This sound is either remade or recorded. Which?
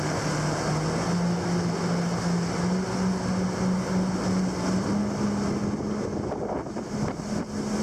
recorded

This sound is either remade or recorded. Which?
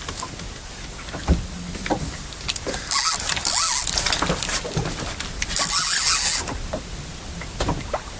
recorded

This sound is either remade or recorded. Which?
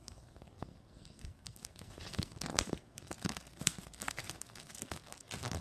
remade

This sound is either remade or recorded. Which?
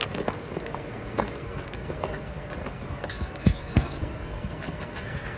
remade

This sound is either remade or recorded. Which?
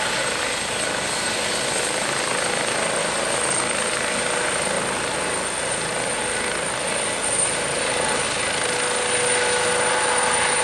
recorded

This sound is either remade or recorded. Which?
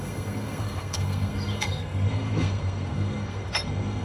remade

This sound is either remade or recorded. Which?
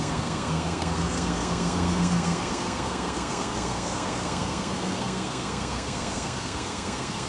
remade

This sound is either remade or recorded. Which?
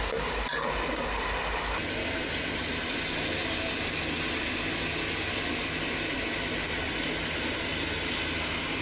recorded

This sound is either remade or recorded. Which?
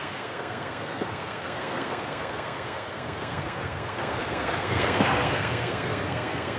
remade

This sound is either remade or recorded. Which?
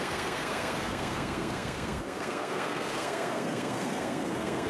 remade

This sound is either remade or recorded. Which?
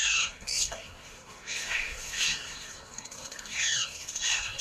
remade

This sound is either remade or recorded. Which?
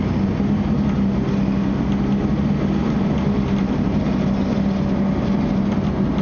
recorded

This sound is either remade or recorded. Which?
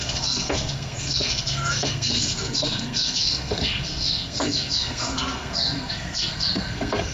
remade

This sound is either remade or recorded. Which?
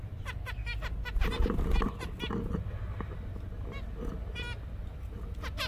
recorded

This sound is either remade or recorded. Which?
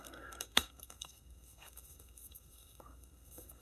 remade